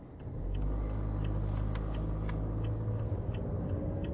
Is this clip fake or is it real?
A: real